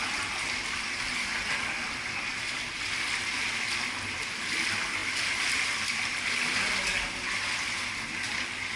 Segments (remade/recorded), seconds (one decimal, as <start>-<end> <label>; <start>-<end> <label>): 0.0-8.8 recorded